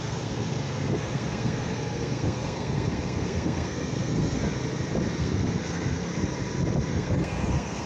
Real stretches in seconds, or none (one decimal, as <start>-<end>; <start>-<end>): 4.4-5.2; 6.1-6.9